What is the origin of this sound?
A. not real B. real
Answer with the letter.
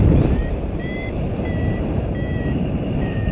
A